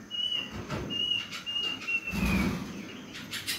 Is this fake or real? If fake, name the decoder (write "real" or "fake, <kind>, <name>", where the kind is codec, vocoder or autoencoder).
real